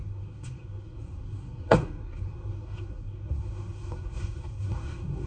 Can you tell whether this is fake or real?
fake